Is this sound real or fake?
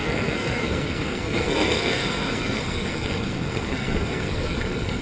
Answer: fake